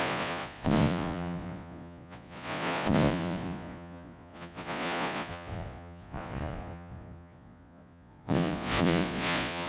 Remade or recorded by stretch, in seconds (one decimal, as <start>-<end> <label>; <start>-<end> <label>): 0.0-9.7 remade